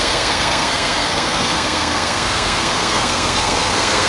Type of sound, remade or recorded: remade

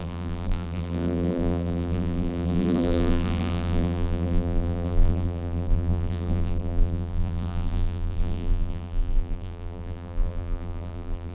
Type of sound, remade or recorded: remade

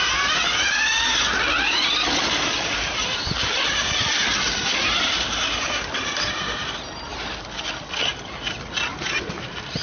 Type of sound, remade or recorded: recorded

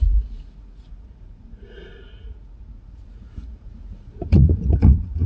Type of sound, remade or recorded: remade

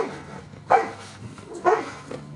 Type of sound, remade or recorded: remade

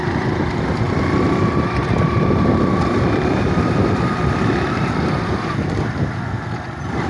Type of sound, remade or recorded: remade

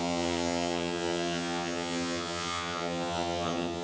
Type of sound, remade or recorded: remade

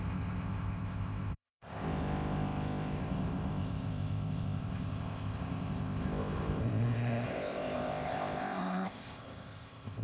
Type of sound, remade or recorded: remade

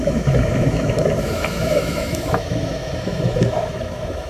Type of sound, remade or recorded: remade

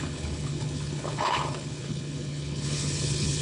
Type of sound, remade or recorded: remade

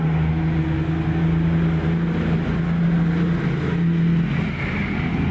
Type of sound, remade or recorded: recorded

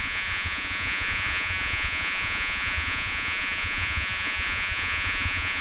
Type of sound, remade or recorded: remade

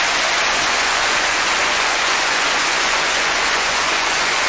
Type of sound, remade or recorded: remade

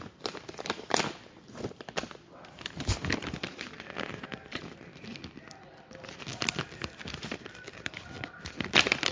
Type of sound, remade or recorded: remade